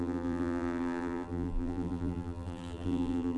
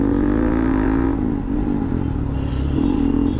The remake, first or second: first